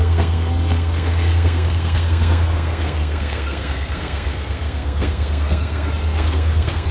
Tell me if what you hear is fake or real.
fake